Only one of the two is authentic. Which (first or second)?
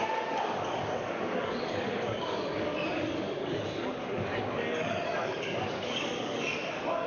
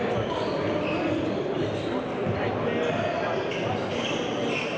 second